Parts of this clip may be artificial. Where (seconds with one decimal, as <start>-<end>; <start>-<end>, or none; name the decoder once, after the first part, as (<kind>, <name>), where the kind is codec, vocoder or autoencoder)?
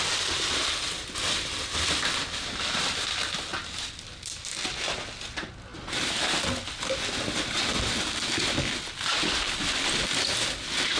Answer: none